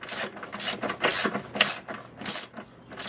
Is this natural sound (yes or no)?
yes